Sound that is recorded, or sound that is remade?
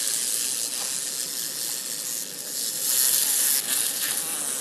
recorded